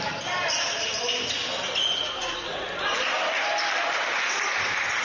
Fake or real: real